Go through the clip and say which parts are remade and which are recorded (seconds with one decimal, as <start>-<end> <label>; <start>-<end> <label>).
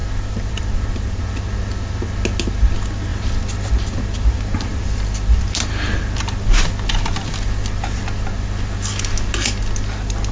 0.0-1.2 remade; 1.2-3.1 recorded; 3.1-3.7 remade; 3.7-10.3 recorded